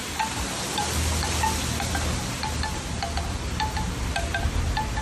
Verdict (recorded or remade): recorded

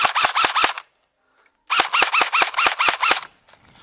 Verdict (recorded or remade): recorded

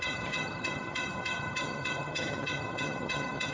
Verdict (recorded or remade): remade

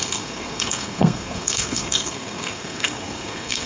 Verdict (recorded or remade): remade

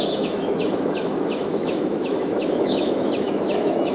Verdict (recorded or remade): remade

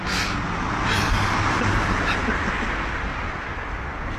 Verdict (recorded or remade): recorded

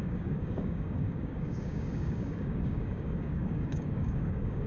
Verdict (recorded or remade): remade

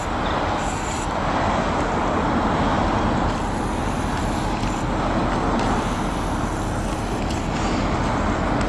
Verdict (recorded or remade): recorded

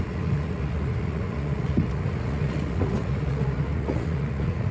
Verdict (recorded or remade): remade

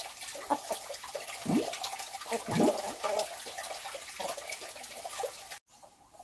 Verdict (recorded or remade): recorded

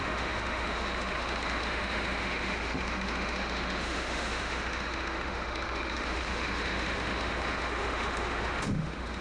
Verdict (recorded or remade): remade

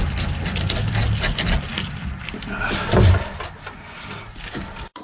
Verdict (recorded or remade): recorded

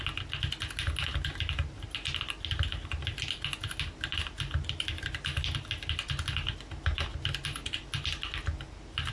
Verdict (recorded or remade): recorded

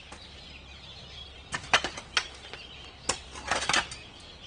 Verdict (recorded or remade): recorded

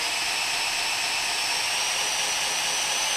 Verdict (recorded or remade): recorded